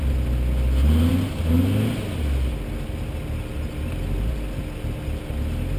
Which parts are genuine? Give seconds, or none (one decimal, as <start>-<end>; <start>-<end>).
0.0-5.8